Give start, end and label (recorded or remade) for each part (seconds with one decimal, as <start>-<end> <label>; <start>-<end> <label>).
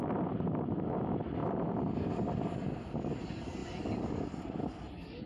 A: 0.0-5.3 recorded